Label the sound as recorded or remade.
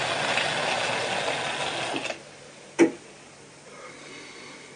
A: recorded